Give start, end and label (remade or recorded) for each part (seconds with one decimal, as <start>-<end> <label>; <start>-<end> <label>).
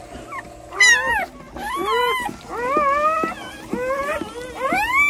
0.0-5.1 recorded